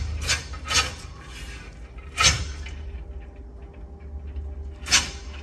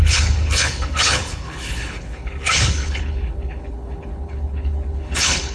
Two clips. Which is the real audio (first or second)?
first